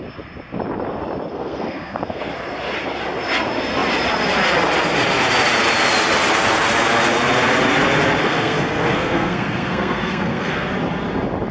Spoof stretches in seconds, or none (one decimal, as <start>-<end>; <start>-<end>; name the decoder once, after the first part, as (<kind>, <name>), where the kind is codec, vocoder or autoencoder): 1.3-2.2 (codec, SNAC); 8.2-10.7